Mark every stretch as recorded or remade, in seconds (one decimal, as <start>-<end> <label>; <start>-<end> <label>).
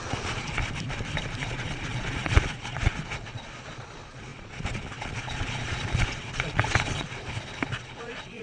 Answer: 0.0-0.6 remade; 0.6-1.5 recorded; 1.5-7.2 remade; 7.2-7.8 recorded; 7.8-8.4 remade